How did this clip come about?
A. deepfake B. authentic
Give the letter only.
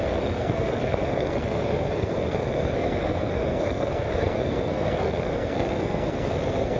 A